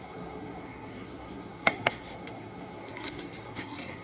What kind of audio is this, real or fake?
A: fake